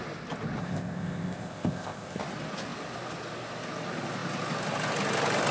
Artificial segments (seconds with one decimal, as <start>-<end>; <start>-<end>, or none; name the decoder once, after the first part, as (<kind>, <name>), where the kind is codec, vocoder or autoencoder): 0.6-2.2 (codec, ZipCodec)